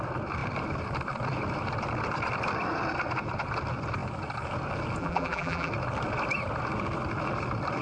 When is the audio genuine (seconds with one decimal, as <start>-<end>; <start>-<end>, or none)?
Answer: 0.0-5.0; 5.7-7.8